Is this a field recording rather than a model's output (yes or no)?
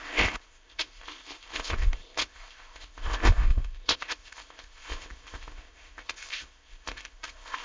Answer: no